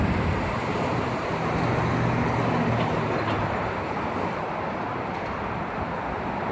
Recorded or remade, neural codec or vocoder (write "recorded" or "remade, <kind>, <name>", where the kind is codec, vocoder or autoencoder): recorded